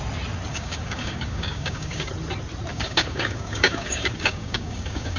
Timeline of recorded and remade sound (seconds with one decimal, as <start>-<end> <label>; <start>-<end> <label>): 0.0-0.5 recorded; 0.5-2.1 remade; 2.1-2.7 recorded; 2.7-5.2 remade